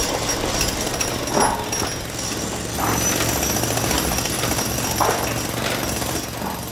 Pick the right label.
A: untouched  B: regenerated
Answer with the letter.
A